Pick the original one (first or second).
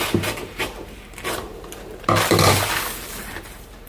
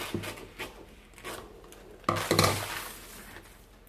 second